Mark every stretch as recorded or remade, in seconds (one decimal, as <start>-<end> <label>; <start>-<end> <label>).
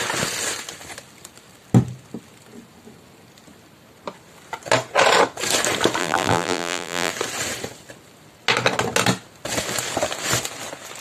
0.0-6.0 recorded; 6.0-7.1 remade; 7.1-11.0 recorded